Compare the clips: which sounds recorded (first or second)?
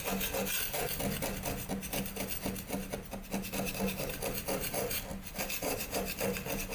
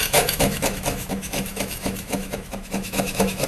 first